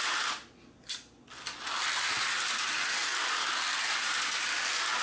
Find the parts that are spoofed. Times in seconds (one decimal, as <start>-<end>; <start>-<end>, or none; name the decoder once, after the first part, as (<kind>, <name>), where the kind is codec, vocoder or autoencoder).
none